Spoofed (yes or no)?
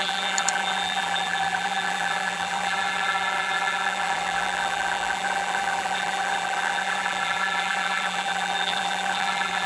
yes